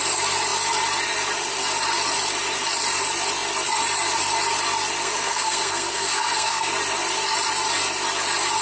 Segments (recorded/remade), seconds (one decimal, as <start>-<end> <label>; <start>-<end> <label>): 0.0-5.0 recorded; 5.0-6.7 remade; 6.7-8.6 recorded